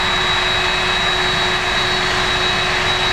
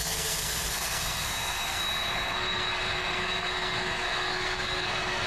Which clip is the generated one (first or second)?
second